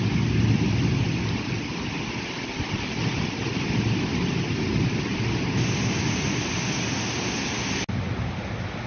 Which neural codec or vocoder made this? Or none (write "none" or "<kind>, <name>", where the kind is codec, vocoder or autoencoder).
none